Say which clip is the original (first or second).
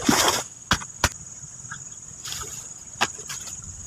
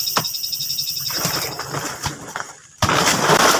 first